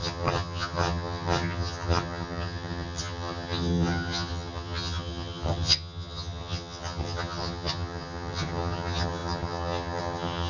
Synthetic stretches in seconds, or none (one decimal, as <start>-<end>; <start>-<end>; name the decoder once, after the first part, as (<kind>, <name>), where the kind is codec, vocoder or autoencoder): 0.0-10.5 (vocoder, HiFi-GAN)